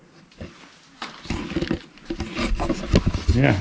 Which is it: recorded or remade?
recorded